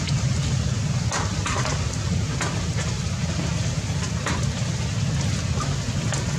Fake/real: real